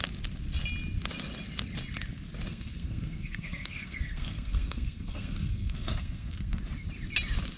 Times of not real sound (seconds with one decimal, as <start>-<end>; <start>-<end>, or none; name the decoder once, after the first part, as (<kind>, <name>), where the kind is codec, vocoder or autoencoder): 2.5-6.6 (codec, SNAC)